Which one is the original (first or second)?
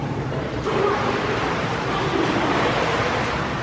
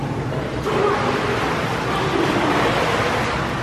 second